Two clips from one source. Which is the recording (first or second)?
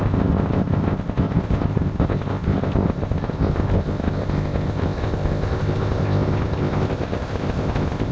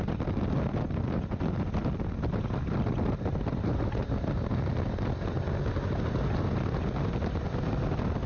second